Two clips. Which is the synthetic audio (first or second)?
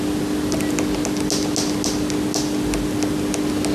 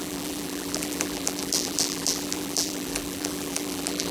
second